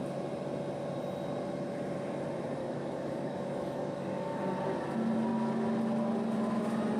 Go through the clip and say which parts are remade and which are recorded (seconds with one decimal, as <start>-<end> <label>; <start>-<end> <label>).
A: 0.0-2.6 recorded; 2.6-4.4 remade; 4.4-7.0 recorded